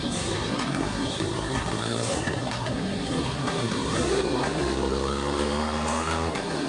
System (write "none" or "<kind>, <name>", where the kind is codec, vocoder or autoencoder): codec, SNAC